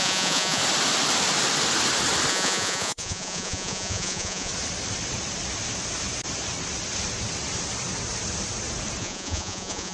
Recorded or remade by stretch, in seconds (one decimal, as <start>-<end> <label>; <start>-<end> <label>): 0.0-0.6 remade; 0.6-2.3 recorded; 2.3-4.5 remade; 4.5-9.0 recorded; 9.0-9.9 remade

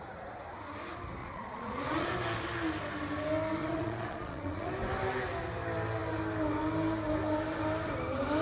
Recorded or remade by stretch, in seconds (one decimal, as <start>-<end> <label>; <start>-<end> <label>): 0.0-1.2 recorded; 1.2-2.1 remade; 2.1-3.6 recorded; 3.6-4.7 remade; 4.7-8.4 recorded

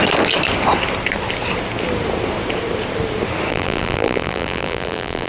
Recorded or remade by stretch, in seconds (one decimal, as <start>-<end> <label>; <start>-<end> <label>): 0.0-3.5 recorded; 3.5-5.3 remade

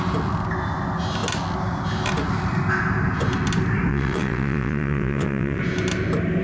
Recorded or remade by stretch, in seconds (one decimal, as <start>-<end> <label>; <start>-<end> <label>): 0.0-3.9 recorded; 3.9-5.6 remade; 5.6-6.4 recorded

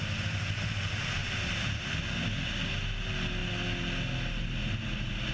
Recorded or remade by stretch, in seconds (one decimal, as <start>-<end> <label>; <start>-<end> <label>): 0.0-1.2 recorded; 1.2-1.9 remade; 1.9-5.3 recorded

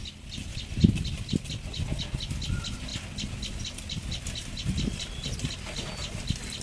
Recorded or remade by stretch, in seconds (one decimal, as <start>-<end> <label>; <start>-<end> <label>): 0.0-6.6 recorded